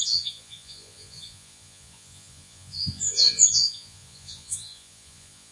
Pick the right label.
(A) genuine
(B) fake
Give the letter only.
B